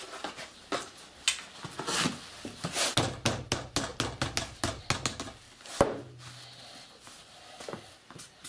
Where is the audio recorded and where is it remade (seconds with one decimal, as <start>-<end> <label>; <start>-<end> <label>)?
0.0-8.5 recorded